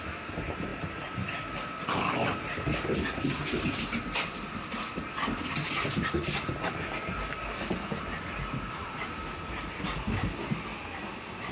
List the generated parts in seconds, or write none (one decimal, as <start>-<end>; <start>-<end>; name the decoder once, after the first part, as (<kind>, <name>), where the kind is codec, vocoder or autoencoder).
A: none